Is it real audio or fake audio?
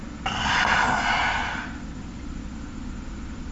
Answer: real